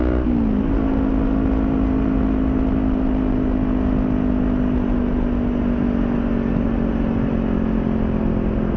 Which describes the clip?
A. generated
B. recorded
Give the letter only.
B